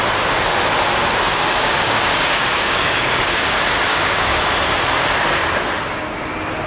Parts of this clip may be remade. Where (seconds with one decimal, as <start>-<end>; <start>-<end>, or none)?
1.3-3.2; 3.9-4.4

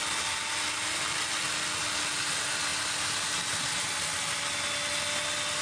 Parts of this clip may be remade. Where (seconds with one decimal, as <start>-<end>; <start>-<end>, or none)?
none

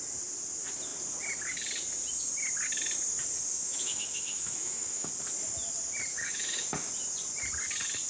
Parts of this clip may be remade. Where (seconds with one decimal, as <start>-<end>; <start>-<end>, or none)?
3.5-5.1; 6.1-6.9

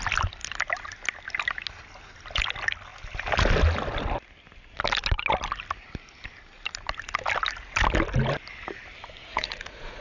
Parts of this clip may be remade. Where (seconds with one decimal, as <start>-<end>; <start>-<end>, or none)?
9.3-10.0